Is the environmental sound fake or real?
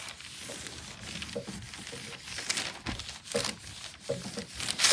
real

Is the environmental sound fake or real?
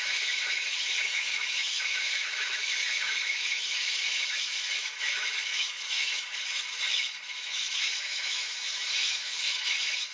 fake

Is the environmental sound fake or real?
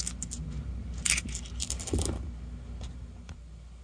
real